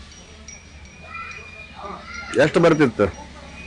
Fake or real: real